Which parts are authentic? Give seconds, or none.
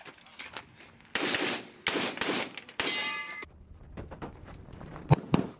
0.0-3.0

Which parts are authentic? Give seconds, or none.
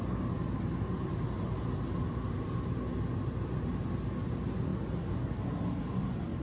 0.0-6.4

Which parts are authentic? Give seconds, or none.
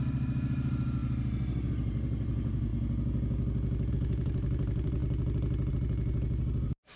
1.0-1.7; 2.7-3.9; 5.0-5.7